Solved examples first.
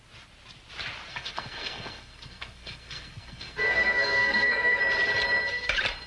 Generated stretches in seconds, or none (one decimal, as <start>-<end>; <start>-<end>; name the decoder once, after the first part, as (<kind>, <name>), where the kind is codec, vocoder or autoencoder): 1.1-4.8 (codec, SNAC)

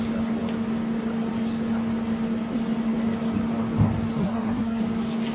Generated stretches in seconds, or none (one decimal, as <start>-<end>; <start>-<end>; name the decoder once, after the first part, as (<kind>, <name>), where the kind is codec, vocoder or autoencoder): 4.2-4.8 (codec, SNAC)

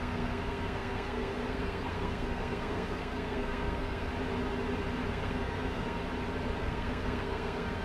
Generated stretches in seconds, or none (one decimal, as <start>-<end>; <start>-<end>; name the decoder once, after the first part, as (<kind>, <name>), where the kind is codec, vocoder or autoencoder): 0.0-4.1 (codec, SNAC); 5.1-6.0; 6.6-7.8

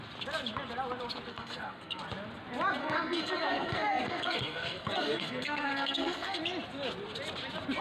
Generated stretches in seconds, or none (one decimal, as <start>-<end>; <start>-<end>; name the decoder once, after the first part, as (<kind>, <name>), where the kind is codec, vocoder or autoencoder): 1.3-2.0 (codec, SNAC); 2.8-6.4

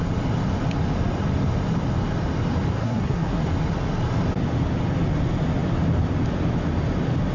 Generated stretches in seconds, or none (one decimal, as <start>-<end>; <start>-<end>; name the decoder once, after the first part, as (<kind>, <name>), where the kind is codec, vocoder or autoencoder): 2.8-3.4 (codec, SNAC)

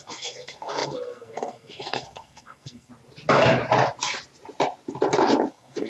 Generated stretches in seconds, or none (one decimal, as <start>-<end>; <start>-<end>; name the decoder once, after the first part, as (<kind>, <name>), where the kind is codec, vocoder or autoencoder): 0.0-2.9 (codec, SNAC); 5.5-5.9